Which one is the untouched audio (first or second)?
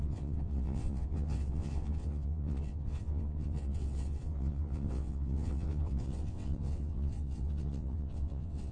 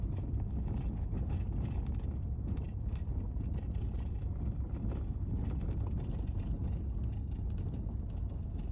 second